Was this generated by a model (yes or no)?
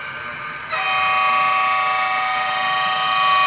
no